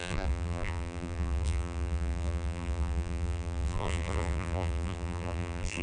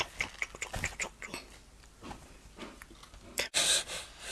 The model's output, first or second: first